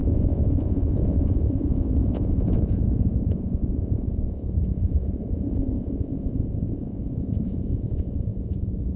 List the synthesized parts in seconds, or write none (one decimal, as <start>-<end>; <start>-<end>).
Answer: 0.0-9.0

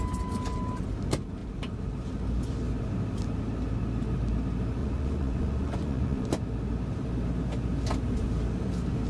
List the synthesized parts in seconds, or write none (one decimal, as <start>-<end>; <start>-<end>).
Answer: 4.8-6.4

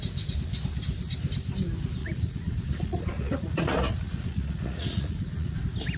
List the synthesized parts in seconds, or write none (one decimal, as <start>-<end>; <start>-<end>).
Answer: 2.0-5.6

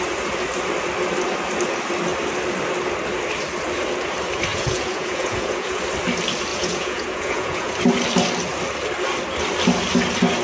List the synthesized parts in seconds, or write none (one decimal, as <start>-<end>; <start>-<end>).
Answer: 4.5-5.8; 6.5-7.7

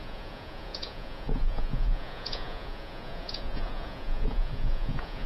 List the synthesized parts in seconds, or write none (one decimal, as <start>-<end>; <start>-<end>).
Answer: 0.0-5.3

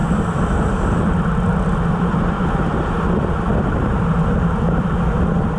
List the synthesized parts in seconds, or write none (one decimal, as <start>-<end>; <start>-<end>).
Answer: none

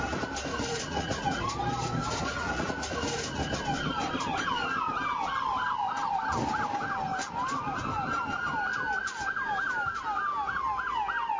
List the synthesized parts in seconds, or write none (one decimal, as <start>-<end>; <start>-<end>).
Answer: 0.5-1.4; 2.0-3.4

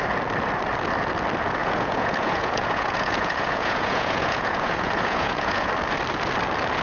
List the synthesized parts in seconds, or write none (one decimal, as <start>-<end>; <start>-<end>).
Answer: 1.6-5.7